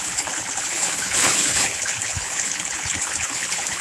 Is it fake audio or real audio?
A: fake